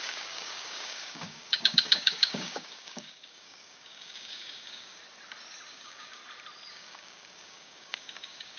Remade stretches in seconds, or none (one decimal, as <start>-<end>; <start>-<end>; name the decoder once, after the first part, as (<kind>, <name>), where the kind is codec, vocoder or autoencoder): 0.0-5.0 (codec, DAC); 5.7-6.2; 6.7-8.6